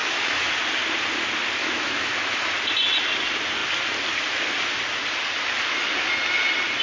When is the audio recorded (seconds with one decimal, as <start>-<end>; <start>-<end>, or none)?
0.5-1.6; 2.5-6.8